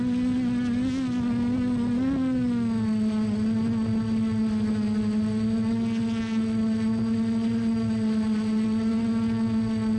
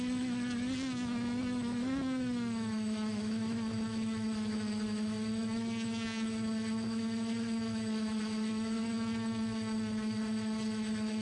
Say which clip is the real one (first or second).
first